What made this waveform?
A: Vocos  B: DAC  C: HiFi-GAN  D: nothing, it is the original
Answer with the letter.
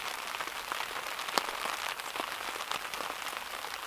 D